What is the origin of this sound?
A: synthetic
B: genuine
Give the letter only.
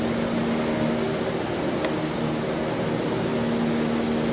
B